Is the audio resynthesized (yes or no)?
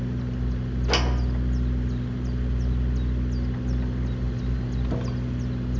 no